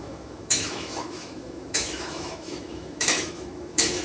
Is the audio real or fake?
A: fake